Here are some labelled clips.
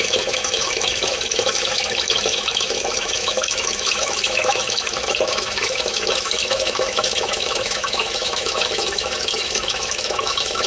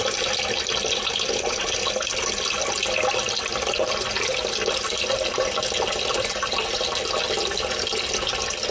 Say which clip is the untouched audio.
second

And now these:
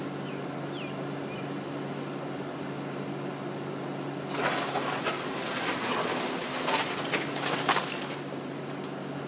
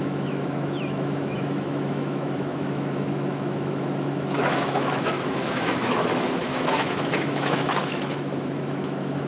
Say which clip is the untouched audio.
first